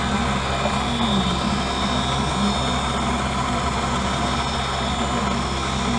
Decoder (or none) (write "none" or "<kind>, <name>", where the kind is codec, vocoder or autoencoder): none